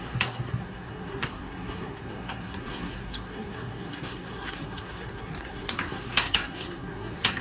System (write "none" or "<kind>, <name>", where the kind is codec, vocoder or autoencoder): codec, SNAC